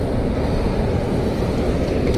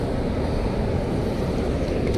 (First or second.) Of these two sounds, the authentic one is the first